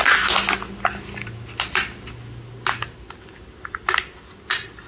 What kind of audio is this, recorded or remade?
recorded